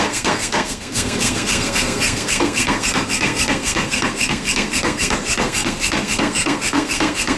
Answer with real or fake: fake